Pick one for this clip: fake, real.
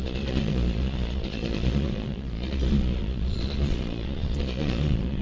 fake